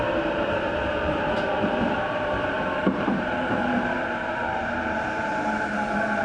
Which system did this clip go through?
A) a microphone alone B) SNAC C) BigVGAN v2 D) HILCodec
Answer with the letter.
C